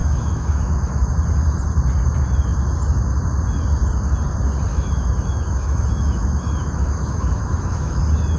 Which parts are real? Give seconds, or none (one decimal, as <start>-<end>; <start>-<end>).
1.1-4.7; 8.0-8.4